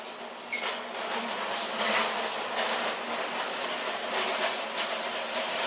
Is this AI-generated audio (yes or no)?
no